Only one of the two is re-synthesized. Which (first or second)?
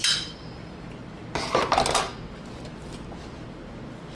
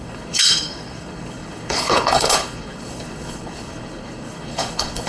second